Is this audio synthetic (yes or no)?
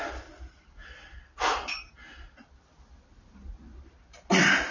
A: no